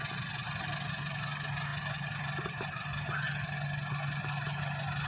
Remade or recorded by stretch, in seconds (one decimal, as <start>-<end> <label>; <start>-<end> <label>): 0.0-5.1 recorded